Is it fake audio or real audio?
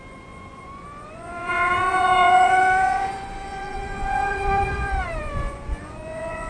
fake